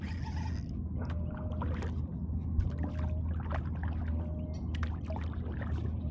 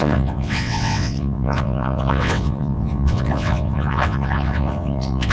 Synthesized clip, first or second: second